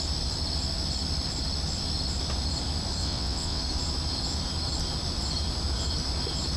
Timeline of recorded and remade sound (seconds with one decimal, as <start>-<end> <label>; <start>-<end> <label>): 0.0-3.0 recorded; 3.0-3.6 remade; 3.6-6.6 recorded